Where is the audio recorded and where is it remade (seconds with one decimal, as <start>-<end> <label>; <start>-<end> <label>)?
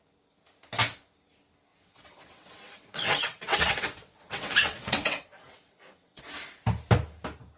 0.0-1.7 recorded; 1.7-6.2 remade; 6.2-7.6 recorded